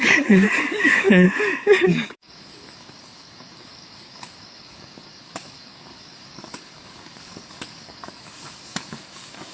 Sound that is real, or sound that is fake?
fake